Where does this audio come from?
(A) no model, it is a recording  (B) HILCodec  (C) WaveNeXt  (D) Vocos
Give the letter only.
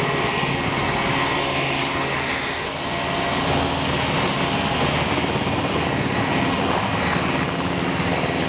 A